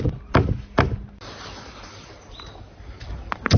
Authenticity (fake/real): real